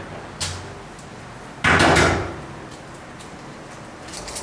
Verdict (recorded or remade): recorded